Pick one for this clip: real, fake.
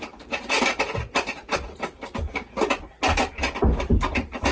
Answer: real